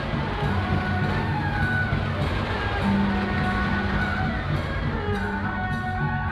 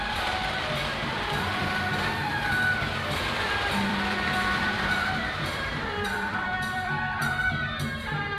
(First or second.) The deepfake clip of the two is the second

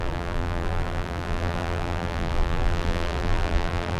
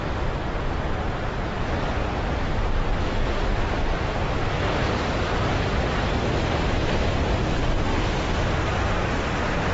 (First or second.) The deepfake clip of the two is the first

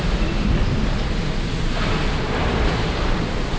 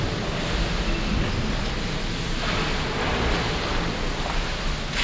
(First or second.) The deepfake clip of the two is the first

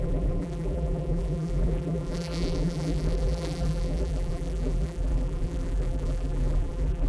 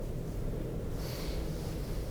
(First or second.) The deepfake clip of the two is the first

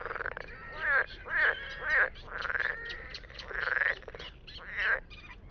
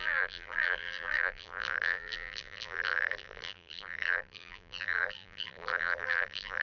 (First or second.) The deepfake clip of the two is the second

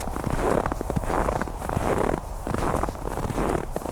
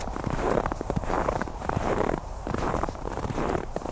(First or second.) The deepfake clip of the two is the second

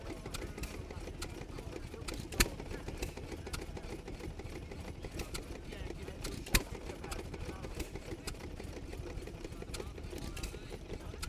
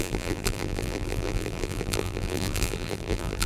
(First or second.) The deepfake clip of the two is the second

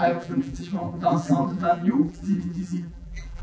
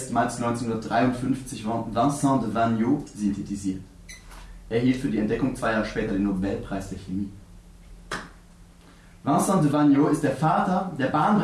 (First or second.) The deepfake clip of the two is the first